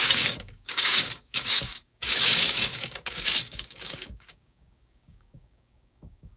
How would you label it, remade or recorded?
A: remade